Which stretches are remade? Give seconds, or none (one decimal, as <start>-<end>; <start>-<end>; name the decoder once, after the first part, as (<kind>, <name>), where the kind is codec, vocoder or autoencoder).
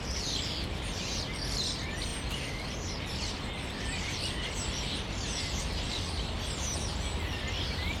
none